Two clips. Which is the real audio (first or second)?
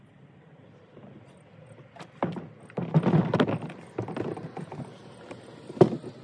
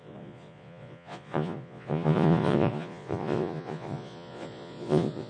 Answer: first